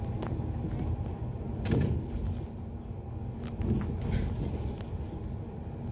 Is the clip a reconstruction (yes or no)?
no